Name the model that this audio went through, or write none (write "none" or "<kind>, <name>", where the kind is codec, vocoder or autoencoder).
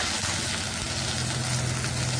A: none